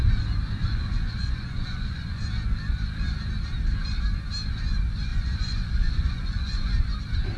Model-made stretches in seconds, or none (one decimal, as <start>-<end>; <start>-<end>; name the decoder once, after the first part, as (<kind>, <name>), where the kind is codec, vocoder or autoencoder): 0.6-2.2 (vocoder, Vocos); 5.1-6.7